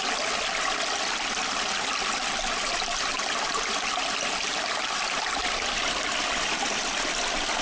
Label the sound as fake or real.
real